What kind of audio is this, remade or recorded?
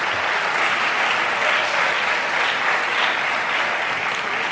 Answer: recorded